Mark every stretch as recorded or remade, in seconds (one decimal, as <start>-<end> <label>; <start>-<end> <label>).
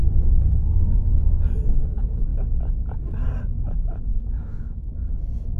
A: 0.0-0.7 remade; 0.7-4.1 recorded; 4.1-5.0 remade; 5.0-5.6 recorded